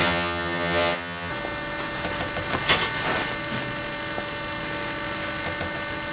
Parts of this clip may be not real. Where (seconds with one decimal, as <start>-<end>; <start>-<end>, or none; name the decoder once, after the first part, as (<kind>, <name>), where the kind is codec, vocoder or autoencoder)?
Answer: 0.0-1.3 (vocoder, HiFi-GAN)